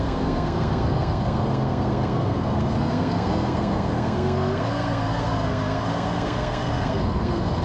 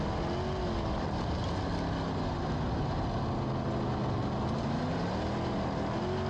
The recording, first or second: second